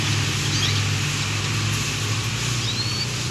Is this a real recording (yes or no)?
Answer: yes